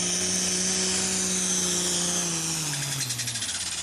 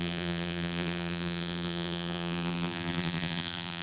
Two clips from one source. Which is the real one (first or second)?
first